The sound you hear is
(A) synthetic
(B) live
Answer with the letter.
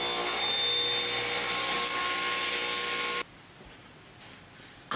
B